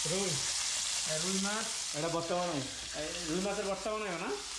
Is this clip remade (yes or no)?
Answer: no